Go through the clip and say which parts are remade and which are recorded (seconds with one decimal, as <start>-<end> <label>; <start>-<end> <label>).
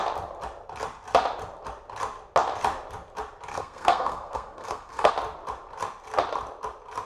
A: 0.0-3.5 recorded; 3.5-5.1 remade; 5.1-7.1 recorded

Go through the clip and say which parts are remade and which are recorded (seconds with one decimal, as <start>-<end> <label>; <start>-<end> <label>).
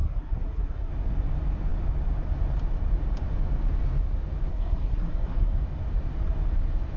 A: 0.0-0.9 remade; 0.9-4.5 recorded; 4.5-5.5 remade; 5.5-7.0 recorded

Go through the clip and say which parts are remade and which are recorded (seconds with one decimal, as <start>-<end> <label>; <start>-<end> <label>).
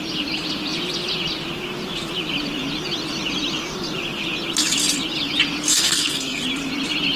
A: 0.0-5.7 recorded; 5.7-6.4 remade; 6.4-7.2 recorded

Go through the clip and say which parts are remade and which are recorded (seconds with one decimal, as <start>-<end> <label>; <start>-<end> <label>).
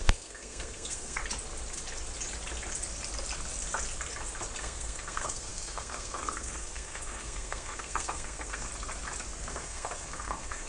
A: 0.0-1.2 remade; 1.2-4.6 recorded; 4.6-8.7 remade; 8.7-9.5 recorded; 9.5-10.7 remade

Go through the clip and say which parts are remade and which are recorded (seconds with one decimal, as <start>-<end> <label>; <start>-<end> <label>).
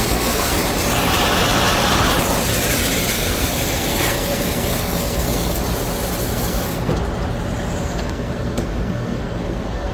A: 0.0-0.6 remade; 0.6-3.1 recorded; 3.1-5.6 remade; 5.6-6.2 recorded; 6.2-6.9 remade; 6.9-7.8 recorded; 7.8-9.9 remade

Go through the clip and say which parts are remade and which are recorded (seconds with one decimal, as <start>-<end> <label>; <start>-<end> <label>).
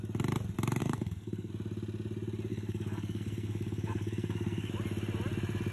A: 0.0-0.8 recorded; 0.8-1.5 remade; 1.5-2.5 recorded; 2.5-4.7 remade; 4.7-5.7 recorded